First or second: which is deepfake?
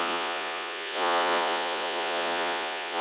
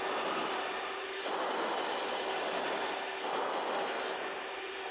first